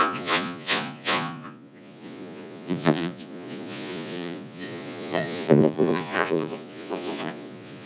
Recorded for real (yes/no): no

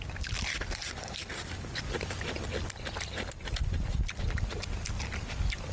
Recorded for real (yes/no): yes